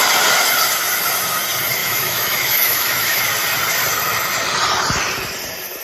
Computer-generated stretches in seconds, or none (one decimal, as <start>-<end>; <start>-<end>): 1.8-3.2